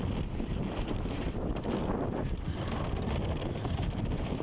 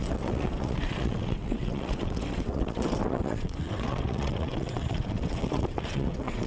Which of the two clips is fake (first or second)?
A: second